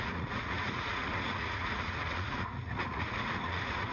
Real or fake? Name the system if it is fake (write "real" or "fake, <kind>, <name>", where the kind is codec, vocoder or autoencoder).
fake, vocoder, Vocos